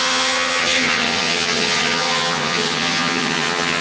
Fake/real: fake